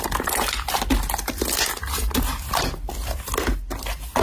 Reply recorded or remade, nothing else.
recorded